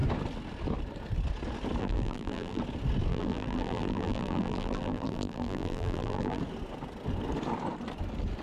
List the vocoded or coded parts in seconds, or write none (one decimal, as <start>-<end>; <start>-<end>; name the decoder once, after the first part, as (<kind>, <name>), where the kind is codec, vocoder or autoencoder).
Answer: 1.8-2.6 (vocoder, BigVGAN v2); 3.1-6.4